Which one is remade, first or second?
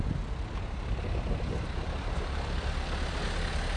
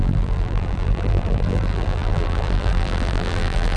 second